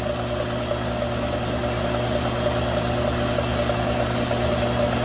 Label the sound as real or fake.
real